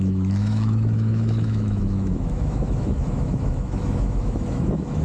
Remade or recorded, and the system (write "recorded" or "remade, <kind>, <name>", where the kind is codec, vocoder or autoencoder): remade, autoencoder, DAC-VAE